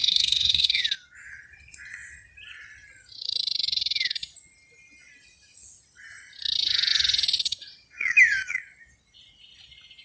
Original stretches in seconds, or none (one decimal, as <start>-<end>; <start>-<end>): 0.8-10.0